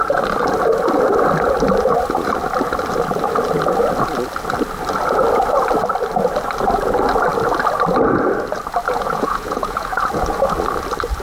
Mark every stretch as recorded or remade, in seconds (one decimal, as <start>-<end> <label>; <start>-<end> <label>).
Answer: 0.0-8.9 recorded; 8.9-10.1 remade; 10.1-11.2 recorded